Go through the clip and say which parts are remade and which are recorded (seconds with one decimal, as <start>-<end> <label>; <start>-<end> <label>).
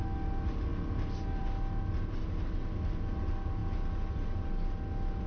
0.0-5.3 recorded